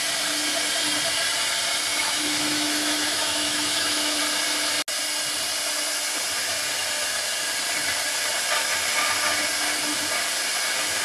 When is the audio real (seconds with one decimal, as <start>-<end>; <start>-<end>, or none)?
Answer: 0.0-1.9; 4.2-11.0